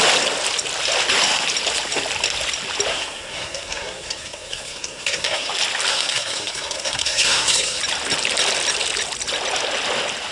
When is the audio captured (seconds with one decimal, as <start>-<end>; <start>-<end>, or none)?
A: 0.0-2.9; 5.5-5.9; 7.8-10.3